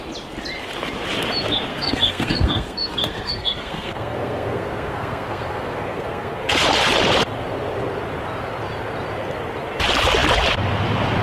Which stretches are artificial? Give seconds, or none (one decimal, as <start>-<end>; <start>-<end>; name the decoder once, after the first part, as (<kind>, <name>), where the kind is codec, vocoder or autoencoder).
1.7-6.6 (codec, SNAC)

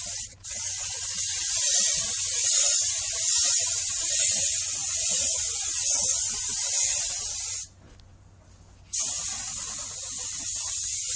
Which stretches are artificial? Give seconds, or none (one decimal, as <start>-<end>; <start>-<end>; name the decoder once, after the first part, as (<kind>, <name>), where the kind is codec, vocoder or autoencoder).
2.4-3.0 (vocoder, Vocos); 4.8-6.3

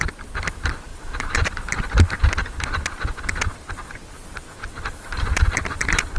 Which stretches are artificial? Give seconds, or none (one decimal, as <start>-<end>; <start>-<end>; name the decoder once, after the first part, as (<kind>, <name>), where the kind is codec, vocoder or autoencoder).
0.9-1.6 (vocoder, BigVGAN v2)

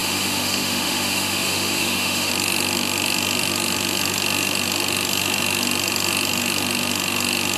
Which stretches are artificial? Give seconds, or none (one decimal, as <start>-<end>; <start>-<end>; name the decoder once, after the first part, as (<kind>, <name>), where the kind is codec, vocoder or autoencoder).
0.0-2.3 (autoencoder, DAC-VAE)

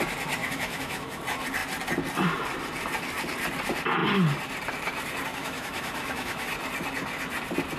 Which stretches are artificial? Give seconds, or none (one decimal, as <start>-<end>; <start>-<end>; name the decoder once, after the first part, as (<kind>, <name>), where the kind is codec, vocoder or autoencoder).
0.4-1.2 (autoencoder, DAC-VAE); 5.4-6.5